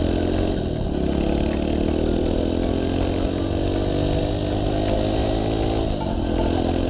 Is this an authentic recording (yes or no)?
yes